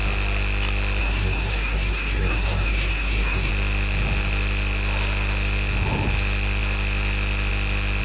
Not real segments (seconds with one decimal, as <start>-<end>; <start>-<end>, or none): 1.0-3.5